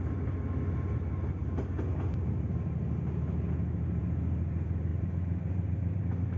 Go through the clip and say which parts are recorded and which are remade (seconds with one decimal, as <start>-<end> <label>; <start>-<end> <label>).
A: 0.0-4.9 recorded; 4.9-6.0 remade; 6.0-6.4 recorded

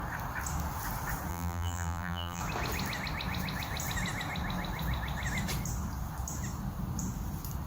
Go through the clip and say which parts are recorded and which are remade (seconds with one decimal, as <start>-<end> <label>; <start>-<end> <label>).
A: 0.0-1.3 recorded; 1.3-2.4 remade; 2.4-7.7 recorded

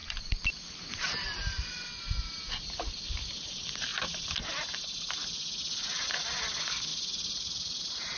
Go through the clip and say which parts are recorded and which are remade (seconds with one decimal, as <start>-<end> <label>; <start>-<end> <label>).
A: 0.0-2.5 remade; 2.5-6.9 recorded; 6.9-8.2 remade

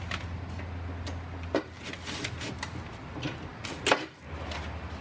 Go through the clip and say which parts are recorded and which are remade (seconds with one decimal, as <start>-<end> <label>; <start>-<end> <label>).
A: 0.0-5.0 recorded

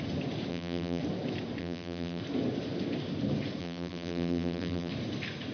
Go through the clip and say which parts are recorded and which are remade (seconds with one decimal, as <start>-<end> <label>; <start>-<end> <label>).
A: 0.0-0.5 recorded; 0.5-1.0 remade; 1.0-1.6 recorded; 1.6-2.2 remade; 2.2-3.6 recorded; 3.6-4.9 remade; 4.9-5.5 recorded

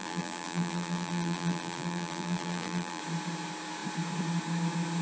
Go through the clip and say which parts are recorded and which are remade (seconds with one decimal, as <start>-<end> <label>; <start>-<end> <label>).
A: 0.0-3.0 remade; 3.0-5.0 recorded